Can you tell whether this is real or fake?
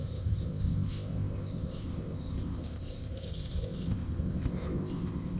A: fake